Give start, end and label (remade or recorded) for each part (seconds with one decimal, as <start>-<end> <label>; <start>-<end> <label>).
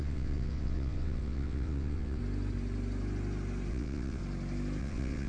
0.0-2.2 remade; 2.2-3.7 recorded; 3.7-4.2 remade; 4.2-4.8 recorded; 4.8-5.3 remade